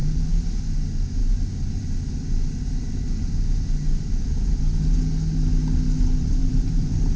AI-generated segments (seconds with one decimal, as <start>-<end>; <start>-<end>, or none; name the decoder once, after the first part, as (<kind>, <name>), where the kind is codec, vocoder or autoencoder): 0.0-0.6 (vocoder, BigVGAN v2); 1.2-4.6; 6.4-7.2